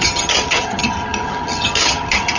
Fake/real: fake